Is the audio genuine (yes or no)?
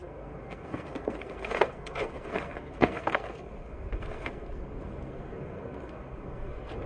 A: no